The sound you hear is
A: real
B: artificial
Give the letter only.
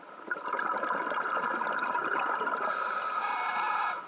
A